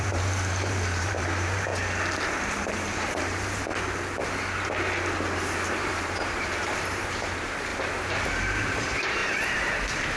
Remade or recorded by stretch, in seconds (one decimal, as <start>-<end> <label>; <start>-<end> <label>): 0.0-1.7 remade; 1.7-2.4 recorded; 2.4-3.7 remade; 3.7-5.7 recorded; 5.7-9.2 remade; 9.2-10.2 recorded